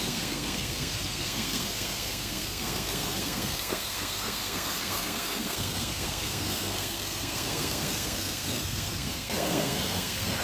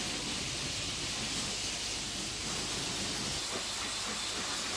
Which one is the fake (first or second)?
first